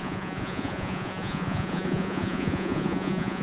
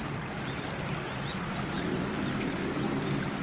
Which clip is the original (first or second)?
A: second